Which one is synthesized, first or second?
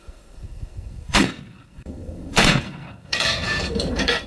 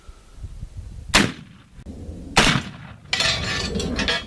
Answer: first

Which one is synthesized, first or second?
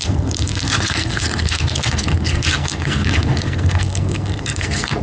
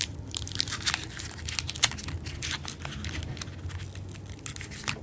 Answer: first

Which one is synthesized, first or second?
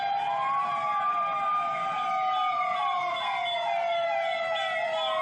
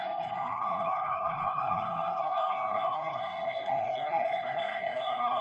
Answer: second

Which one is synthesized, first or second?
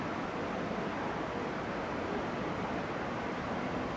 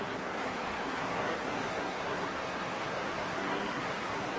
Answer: second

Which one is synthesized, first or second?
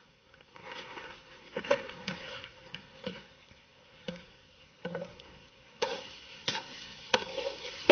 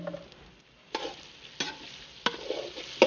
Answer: first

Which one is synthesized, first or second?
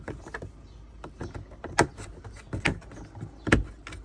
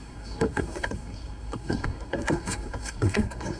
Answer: second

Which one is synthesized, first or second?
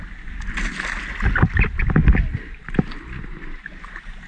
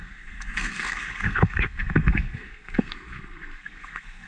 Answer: second